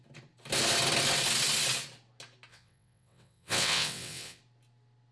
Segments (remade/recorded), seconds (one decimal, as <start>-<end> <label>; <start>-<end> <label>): 0.0-2.5 recorded; 2.5-4.4 remade; 4.4-5.1 recorded